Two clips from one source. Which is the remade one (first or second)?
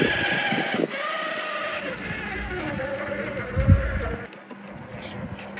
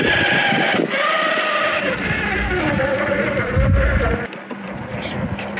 second